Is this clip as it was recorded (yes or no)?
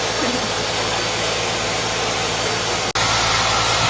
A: yes